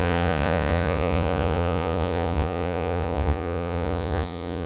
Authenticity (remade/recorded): remade